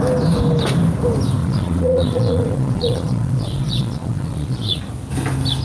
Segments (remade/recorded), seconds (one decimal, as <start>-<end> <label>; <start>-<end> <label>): 0.0-1.4 recorded; 1.4-4.8 remade; 4.8-5.6 recorded